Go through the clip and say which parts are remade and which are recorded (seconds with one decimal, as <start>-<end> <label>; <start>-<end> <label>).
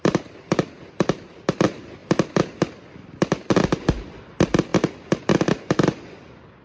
0.0-6.6 recorded